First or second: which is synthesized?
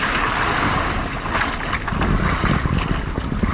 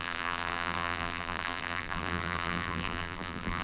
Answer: second